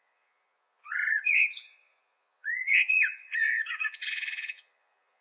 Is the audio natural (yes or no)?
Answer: no